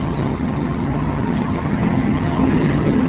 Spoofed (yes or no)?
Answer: yes